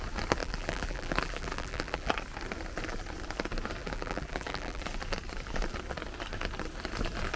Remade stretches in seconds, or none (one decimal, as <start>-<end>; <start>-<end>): 0.4-2.1; 3.8-4.8